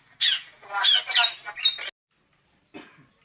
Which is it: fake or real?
real